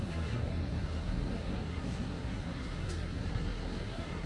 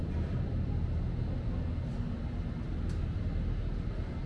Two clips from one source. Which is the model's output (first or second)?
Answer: first